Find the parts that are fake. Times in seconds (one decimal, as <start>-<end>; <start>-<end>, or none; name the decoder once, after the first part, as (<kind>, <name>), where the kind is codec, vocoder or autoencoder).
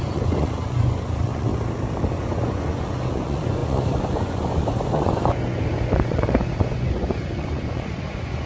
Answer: 0.0-1.5 (vocoder, Vocos); 2.1-8.5